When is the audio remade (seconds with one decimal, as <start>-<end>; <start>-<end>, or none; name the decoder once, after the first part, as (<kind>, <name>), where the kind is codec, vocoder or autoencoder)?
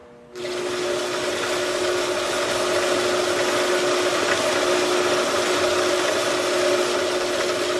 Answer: none